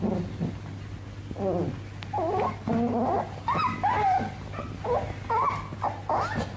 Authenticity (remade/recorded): recorded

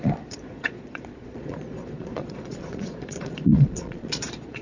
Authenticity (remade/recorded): remade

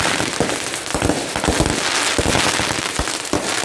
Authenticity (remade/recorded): recorded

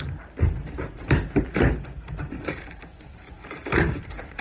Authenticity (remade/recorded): remade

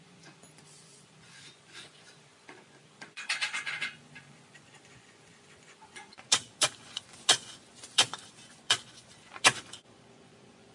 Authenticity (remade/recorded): remade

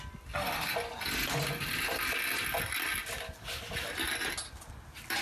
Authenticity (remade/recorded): recorded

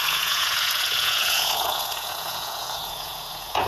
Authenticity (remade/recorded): remade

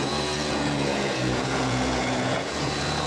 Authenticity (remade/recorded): remade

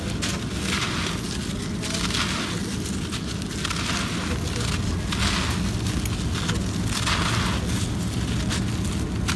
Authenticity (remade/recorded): recorded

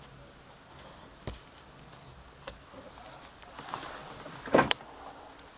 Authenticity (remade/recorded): recorded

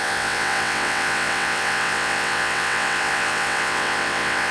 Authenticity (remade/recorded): remade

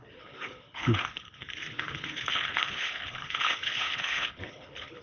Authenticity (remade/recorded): remade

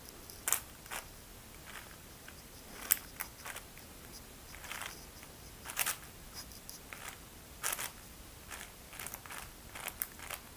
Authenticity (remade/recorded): remade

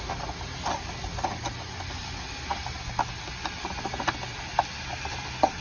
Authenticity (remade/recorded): recorded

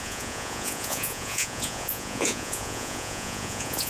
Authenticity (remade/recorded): remade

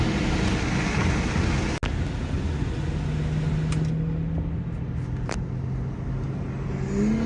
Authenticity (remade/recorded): recorded